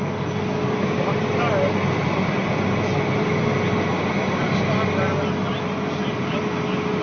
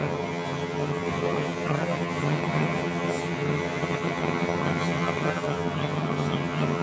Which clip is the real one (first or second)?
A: first